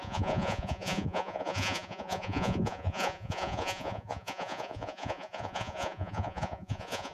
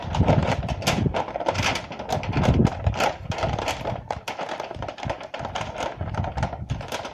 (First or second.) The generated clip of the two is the first